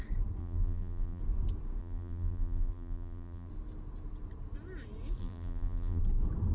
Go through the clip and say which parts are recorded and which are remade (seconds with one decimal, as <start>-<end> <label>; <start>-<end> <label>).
0.0-0.4 recorded; 0.4-1.2 remade; 1.2-1.8 recorded; 1.8-3.5 remade; 3.5-5.2 recorded; 5.2-6.0 remade; 6.0-6.5 recorded

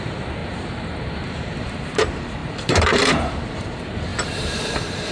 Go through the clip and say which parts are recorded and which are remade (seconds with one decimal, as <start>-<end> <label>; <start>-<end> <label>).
0.0-5.1 remade

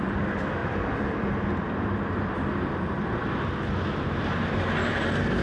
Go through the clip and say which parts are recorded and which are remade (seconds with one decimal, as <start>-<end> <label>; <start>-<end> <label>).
0.0-5.4 remade

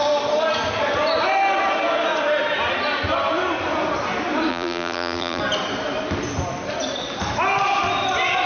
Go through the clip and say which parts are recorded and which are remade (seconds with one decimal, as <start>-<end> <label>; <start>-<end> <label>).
0.0-4.5 recorded; 4.5-5.4 remade; 5.4-8.5 recorded